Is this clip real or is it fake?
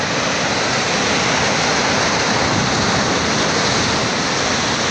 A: real